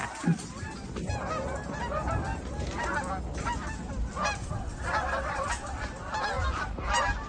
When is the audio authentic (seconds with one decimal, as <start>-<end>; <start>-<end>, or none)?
0.0-4.4; 5.8-7.3